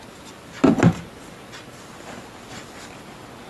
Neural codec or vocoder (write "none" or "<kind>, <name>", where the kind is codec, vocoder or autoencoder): none